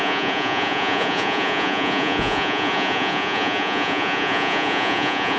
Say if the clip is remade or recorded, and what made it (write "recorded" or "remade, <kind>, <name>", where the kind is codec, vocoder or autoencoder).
remade, vocoder, Vocos